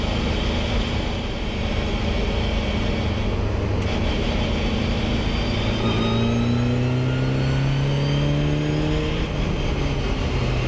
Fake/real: real